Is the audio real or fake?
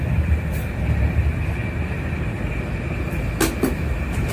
real